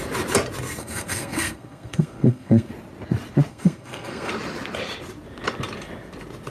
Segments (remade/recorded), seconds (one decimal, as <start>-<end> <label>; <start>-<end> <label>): 0.0-0.8 recorded; 0.8-2.7 remade; 2.7-3.5 recorded; 3.5-4.3 remade; 4.3-6.5 recorded